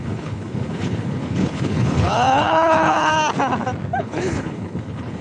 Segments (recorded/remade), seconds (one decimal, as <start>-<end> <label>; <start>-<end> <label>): 0.0-3.1 remade; 3.1-4.0 recorded; 4.0-5.2 remade